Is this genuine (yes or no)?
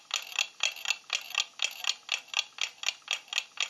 yes